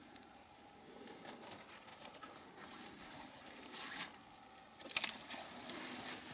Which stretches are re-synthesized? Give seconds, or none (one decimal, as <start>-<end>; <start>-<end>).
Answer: 0.0-1.2; 1.9-4.2